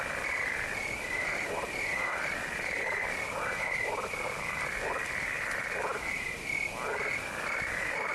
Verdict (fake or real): real